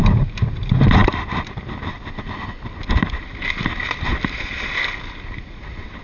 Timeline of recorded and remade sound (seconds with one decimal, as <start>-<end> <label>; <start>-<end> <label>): 0.0-6.0 recorded